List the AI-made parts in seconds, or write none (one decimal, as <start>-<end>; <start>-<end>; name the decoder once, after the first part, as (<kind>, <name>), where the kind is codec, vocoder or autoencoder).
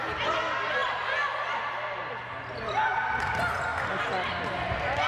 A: none